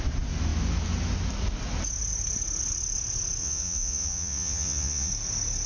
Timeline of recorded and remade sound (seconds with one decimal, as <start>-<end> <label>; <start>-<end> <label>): 0.0-3.4 recorded; 3.4-5.1 remade; 5.1-5.7 recorded